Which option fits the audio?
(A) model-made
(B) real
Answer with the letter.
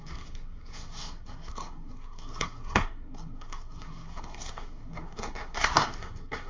A